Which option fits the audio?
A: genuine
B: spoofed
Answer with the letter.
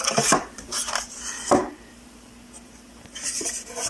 B